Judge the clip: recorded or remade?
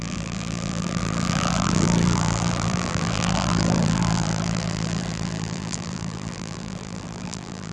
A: remade